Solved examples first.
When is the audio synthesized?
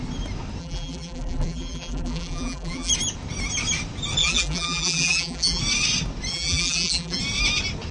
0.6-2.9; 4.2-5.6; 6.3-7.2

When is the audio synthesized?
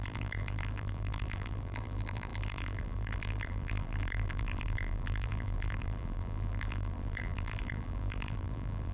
0.0-8.9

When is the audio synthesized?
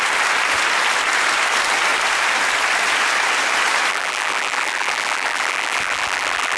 3.9-6.6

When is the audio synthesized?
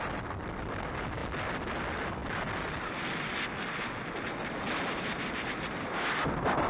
none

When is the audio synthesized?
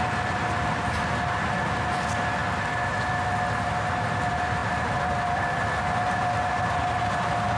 none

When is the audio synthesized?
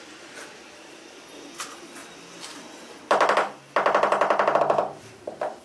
0.0-2.0; 4.6-5.6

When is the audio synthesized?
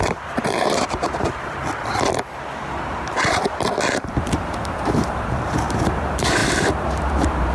0.0-1.6; 3.9-7.5